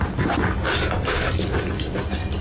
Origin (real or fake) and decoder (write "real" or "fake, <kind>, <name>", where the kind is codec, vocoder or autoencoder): real